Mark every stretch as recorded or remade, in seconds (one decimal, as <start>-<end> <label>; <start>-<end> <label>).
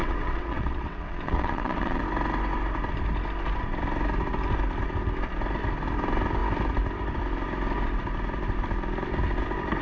0.0-2.0 remade; 2.0-9.8 recorded